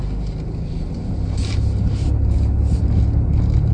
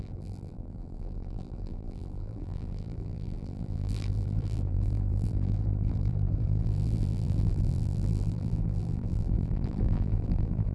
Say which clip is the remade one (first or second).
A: second